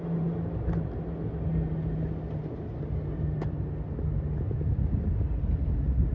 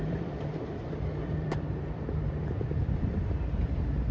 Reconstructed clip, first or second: second